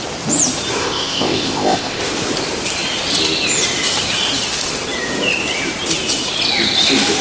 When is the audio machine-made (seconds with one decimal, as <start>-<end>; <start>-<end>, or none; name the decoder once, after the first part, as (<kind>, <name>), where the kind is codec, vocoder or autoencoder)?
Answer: 0.8-2.0 (codec, ZipCodec)